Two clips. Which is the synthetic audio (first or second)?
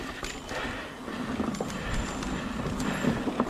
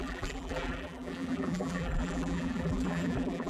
second